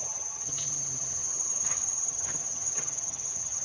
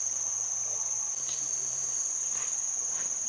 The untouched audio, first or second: second